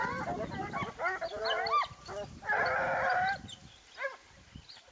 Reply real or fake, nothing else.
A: real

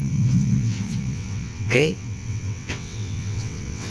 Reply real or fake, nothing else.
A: fake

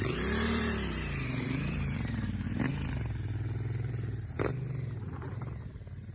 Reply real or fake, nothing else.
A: fake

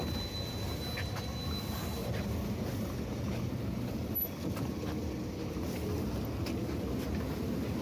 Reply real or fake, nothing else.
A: real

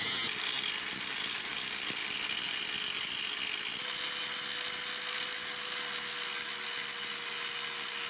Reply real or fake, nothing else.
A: real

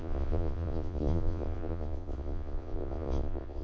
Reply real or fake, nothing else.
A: fake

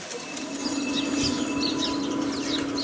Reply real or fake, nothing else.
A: real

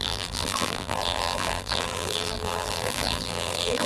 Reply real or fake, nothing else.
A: fake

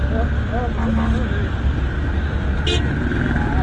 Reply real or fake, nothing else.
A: real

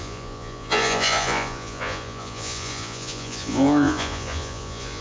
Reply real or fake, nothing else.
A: fake